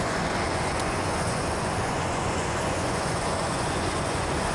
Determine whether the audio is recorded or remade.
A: remade